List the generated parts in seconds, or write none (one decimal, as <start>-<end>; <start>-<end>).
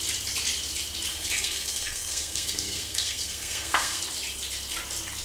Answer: 1.1-4.0